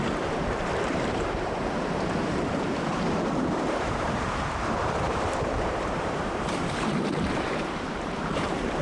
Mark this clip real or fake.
fake